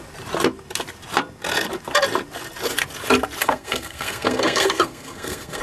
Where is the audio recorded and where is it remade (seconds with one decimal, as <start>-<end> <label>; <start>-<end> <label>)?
0.0-3.4 recorded; 3.4-5.6 remade